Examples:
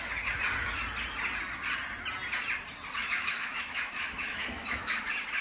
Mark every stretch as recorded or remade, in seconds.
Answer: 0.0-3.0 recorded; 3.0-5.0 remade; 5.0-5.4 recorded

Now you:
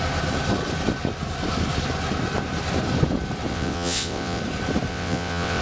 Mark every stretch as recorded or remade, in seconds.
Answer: 0.0-3.5 recorded; 3.5-4.4 remade; 4.4-4.9 recorded; 4.9-5.6 remade

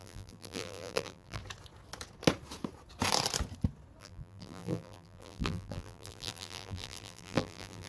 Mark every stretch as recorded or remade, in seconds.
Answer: 0.0-1.4 remade; 1.4-4.0 recorded; 4.0-7.9 remade

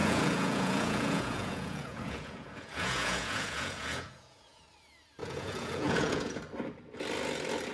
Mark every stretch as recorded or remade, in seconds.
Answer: 0.0-4.6 remade; 4.6-5.2 recorded; 5.2-6.4 remade; 6.4-7.7 recorded

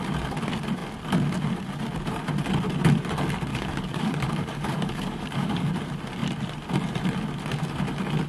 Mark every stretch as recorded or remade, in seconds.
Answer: 0.0-3.5 recorded; 3.5-5.7 remade; 5.7-8.3 recorded

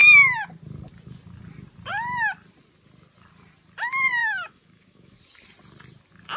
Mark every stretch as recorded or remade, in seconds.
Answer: 0.0-4.2 recorded; 4.2-5.2 remade; 5.2-6.4 recorded